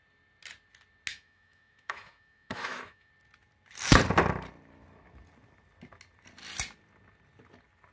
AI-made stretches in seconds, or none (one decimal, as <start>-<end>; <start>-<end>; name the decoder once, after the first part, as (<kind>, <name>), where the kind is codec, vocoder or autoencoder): 1.1-3.1 (autoencoder, DAC-VAE)